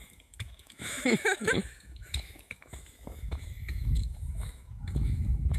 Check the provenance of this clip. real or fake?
fake